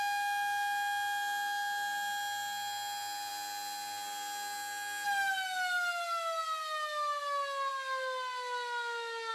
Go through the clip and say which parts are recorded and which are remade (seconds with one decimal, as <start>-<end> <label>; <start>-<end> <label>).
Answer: 0.0-9.3 recorded